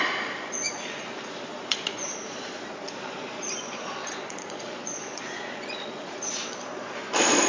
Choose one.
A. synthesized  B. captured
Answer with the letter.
A